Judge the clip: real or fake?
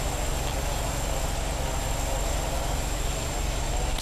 real